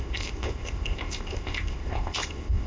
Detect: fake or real fake